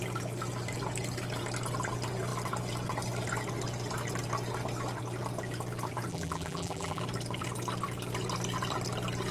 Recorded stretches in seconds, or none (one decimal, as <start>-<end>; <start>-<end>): 0.0-6.1; 7.0-9.3